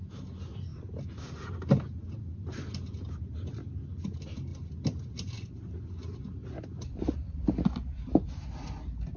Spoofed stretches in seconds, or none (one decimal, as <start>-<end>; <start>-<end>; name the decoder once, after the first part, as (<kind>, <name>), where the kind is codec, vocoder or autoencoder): none